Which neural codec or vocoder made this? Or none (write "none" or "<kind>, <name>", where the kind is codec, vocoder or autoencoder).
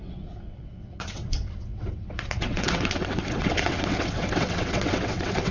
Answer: vocoder, WaveNeXt